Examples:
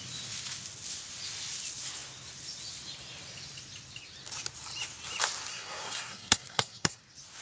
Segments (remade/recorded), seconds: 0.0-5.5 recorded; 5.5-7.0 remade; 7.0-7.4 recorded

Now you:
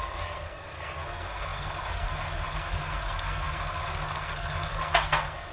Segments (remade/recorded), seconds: 0.0-5.5 remade

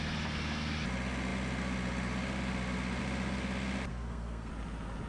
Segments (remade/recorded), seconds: 0.0-3.9 recorded; 3.9-4.5 remade; 4.5-5.1 recorded